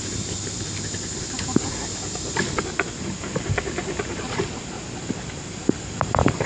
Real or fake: real